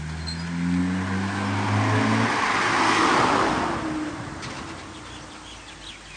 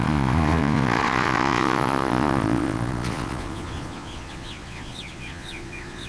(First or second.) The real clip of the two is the first